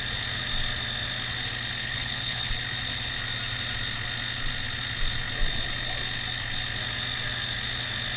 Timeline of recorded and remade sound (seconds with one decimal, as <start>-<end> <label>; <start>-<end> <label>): 0.0-1.8 recorded; 1.8-2.5 remade; 2.5-8.2 recorded